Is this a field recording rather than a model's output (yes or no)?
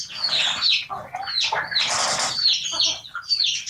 yes